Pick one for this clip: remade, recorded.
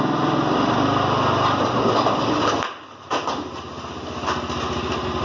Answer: recorded